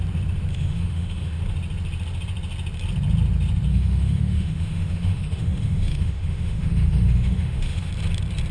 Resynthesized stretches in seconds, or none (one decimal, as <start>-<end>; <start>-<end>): 0.5-1.4; 3.7-7.9